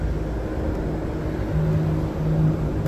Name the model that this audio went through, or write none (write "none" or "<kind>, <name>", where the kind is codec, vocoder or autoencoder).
none